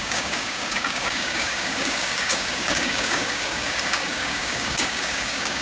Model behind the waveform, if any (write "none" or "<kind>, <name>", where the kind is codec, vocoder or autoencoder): codec, DAC